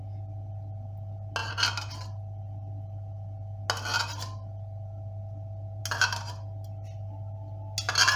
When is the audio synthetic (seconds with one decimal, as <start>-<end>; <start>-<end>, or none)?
none